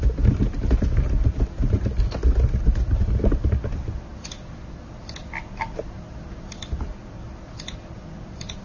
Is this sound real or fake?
real